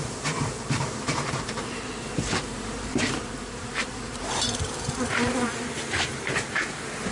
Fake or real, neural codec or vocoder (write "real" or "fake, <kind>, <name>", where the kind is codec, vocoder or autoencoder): fake, vocoder, BigVGAN v2